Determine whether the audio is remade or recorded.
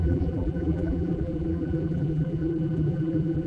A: remade